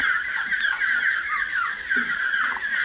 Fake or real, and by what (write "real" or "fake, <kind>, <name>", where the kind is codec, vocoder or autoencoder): fake, vocoder, BigVGAN v2